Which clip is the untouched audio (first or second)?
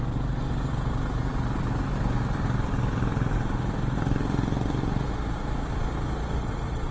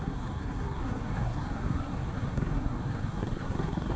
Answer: first